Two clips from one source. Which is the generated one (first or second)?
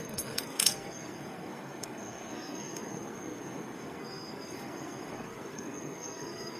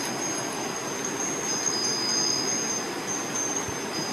first